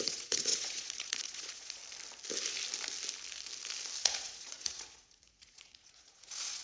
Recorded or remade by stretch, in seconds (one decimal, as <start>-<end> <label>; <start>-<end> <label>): 0.0-1.8 remade; 1.8-4.0 recorded; 4.0-6.6 remade